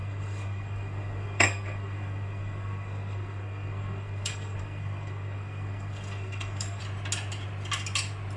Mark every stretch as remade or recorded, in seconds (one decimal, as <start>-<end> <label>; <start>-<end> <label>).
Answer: 0.0-6.8 remade; 6.8-8.4 recorded